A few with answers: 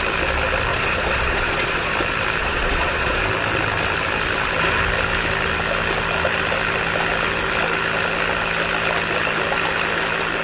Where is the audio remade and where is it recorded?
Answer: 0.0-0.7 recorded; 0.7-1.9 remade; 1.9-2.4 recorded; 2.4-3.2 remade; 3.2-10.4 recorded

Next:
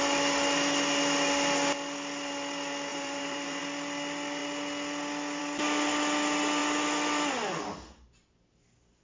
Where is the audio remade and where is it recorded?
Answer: 0.0-2.9 recorded; 2.9-3.6 remade; 3.6-9.0 recorded

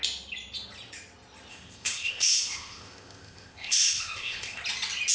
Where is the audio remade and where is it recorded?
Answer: 0.0-1.5 recorded; 1.5-4.6 remade; 4.6-5.1 recorded

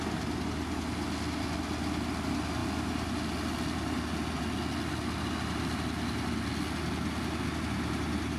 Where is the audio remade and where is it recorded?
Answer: 0.0-8.4 recorded

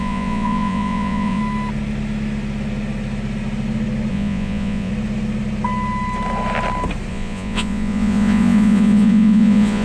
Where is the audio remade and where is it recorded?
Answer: 0.0-1.4 remade; 1.4-4.1 recorded; 4.1-4.9 remade; 4.9-7.1 recorded; 7.1-9.8 remade

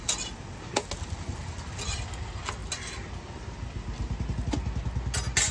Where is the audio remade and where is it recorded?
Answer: 0.0-5.5 recorded